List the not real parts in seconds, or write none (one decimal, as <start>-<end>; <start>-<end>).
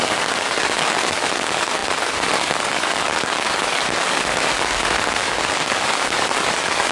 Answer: 0.0-6.9